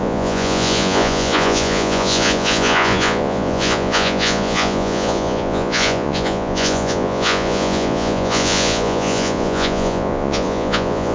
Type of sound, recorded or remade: remade